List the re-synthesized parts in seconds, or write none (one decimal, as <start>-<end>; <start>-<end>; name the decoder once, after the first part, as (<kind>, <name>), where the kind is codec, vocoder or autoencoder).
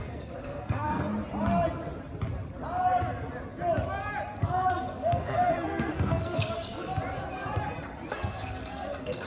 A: 0.0-1.1 (codec, SNAC); 4.4-6.9; 8.1-9.3